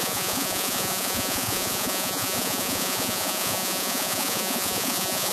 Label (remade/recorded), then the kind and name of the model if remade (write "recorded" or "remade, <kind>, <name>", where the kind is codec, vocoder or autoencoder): remade, vocoder, Vocos